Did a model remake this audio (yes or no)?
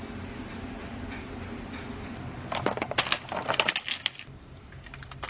no